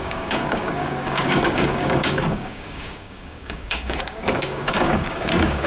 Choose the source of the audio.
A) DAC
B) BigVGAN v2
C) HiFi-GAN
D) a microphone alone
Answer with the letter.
A